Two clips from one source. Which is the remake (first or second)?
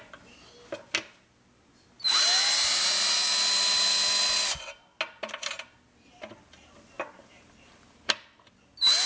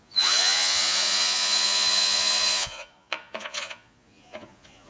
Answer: second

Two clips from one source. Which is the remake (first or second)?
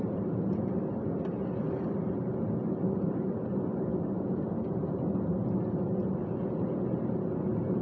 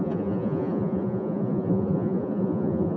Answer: second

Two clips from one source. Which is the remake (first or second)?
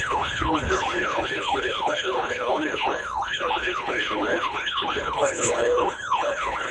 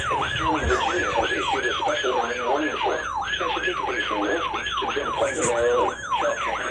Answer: first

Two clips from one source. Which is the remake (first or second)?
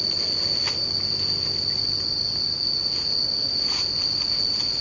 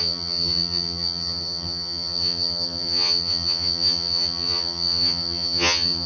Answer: second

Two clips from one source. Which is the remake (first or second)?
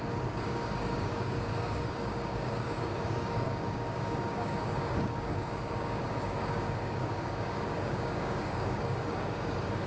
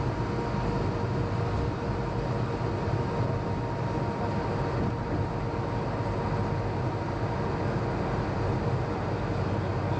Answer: first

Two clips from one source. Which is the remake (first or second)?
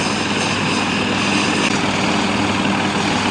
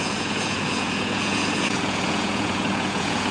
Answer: second